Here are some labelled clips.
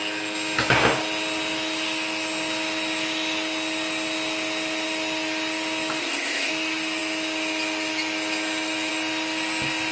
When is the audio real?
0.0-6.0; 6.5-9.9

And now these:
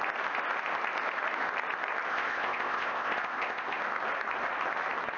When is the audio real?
0.0-2.1; 3.8-5.2